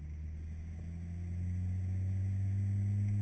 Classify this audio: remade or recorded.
recorded